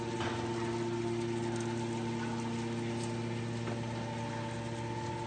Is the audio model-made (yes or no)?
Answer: no